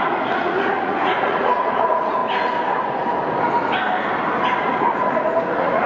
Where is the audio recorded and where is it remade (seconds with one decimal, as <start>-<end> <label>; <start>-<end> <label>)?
0.0-2.2 remade; 2.2-4.6 recorded; 4.6-5.9 remade